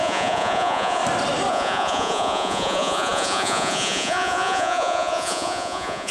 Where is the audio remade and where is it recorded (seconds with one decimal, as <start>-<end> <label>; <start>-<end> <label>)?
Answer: 0.0-1.0 remade; 1.0-1.5 recorded; 1.5-6.1 remade